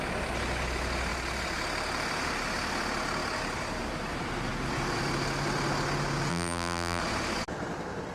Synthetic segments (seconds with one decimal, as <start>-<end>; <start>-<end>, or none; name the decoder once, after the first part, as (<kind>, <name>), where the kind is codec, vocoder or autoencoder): 6.3-7.0 (vocoder, BigVGAN v2)